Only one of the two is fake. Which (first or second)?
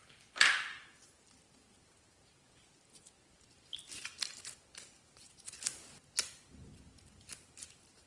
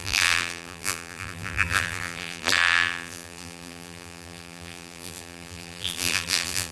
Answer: second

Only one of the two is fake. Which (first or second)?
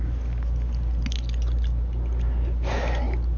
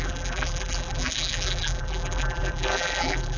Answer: second